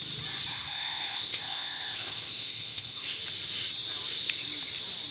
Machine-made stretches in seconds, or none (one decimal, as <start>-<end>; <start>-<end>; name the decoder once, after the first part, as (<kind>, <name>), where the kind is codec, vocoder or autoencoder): 0.5-3.2 (codec, ZipCodec)